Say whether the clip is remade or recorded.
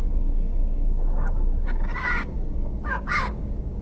remade